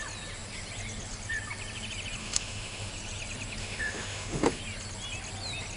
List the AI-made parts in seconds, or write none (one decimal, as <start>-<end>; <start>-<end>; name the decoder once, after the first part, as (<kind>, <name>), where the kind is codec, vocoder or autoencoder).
2.2-2.9 (autoencoder, DAC-VAE); 3.6-4.6